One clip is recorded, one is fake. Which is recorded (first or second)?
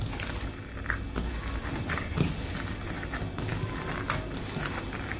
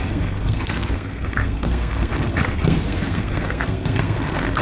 first